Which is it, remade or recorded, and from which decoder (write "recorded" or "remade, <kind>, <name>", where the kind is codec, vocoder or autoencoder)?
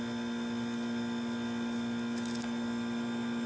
recorded